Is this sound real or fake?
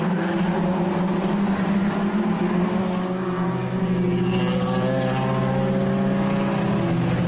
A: real